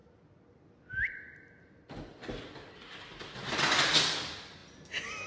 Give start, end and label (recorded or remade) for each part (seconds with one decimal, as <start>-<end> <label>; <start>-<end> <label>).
0.0-5.3 recorded

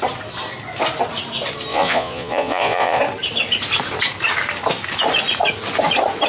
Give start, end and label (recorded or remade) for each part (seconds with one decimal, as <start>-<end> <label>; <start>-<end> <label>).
0.0-1.7 recorded; 1.7-3.0 remade; 3.0-6.3 recorded